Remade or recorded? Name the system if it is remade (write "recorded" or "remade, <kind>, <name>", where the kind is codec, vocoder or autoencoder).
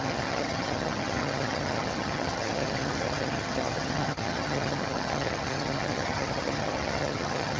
remade, vocoder, HiFi-GAN